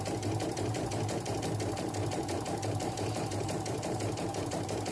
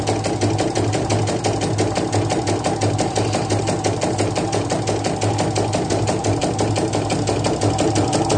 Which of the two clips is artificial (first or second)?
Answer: first